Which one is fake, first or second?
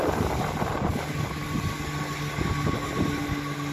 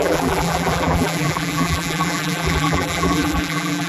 second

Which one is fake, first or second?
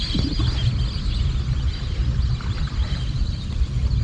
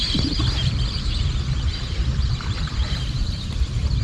second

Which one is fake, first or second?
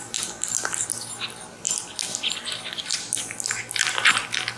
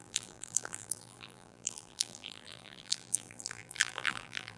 second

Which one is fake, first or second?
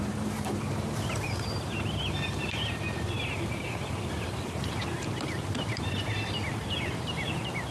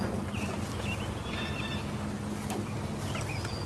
first